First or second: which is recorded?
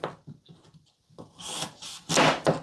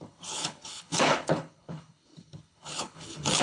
first